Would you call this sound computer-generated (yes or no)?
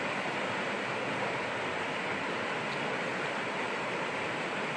no